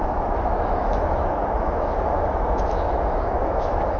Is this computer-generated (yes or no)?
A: yes